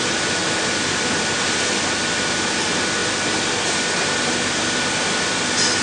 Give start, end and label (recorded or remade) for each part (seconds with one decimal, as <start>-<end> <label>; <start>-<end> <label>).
0.0-5.8 recorded